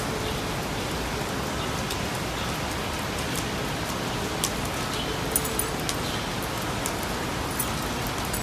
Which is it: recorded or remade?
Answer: recorded